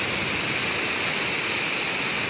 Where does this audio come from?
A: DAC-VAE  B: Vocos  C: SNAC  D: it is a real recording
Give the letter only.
D